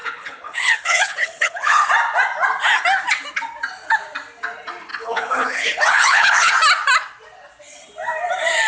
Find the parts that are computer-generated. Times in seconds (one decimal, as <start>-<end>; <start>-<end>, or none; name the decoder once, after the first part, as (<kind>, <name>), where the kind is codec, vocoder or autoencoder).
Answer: 0.0-1.9 (codec, HILCodec); 4.9-6.5